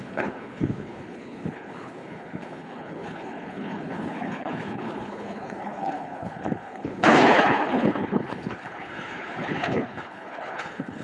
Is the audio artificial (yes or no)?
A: yes